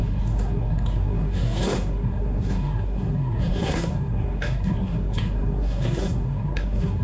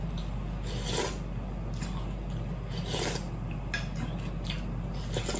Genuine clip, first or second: second